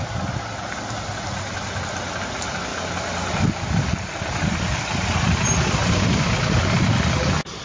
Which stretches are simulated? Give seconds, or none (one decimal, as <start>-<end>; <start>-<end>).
none